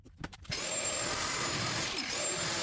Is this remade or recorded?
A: remade